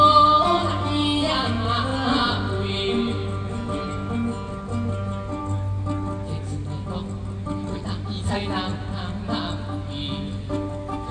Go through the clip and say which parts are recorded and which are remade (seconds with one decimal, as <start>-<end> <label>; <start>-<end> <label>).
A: 0.0-11.1 recorded